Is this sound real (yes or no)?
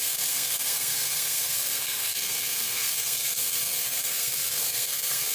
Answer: no